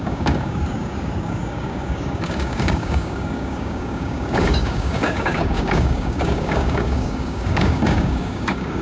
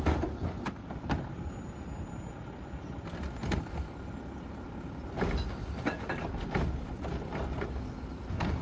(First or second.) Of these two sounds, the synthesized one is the first